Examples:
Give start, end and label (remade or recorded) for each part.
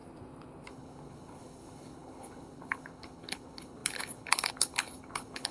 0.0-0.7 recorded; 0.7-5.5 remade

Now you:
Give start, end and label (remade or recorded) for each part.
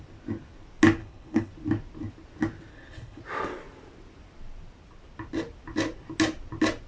0.0-1.0 recorded; 1.0-1.5 remade; 1.5-2.7 recorded; 2.7-3.2 remade; 3.2-6.9 recorded